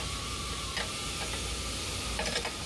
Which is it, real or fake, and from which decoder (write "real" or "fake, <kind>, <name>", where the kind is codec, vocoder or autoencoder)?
real